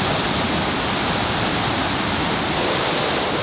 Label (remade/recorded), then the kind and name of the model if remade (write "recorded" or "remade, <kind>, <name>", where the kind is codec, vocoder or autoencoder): recorded